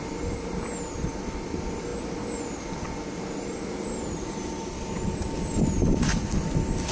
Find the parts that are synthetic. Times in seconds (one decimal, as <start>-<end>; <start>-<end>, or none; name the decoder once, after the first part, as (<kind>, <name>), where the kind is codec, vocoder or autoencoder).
none